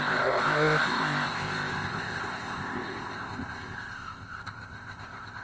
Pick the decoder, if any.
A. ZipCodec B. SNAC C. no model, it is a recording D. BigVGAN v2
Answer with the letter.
A